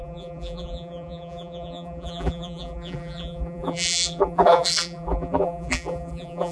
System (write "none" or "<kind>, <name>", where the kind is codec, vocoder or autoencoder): vocoder, BigVGAN v2